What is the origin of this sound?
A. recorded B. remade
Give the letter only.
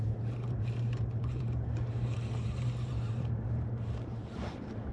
B